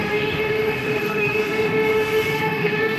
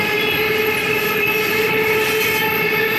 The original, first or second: second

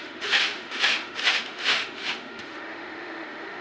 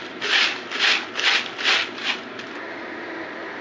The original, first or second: second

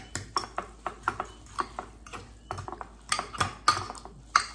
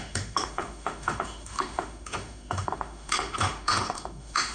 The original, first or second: first